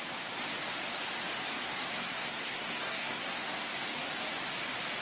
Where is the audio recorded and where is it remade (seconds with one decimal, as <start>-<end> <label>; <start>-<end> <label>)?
0.0-1.6 recorded; 1.6-3.7 remade; 3.7-5.0 recorded